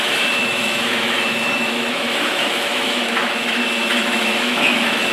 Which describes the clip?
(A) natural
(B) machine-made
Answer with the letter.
B